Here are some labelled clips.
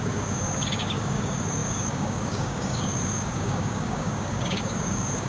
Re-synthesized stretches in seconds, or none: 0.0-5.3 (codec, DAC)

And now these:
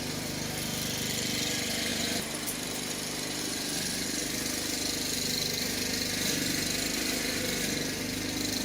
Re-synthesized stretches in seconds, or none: 1.9-3.4 (vocoder, BigVGAN v2)

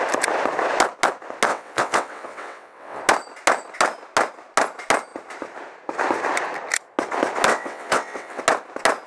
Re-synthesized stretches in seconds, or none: 1.5-3.0 (vocoder, WaveNeXt); 7.5-8.4